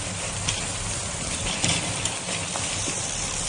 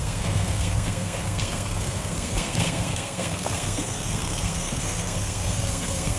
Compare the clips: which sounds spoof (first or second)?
second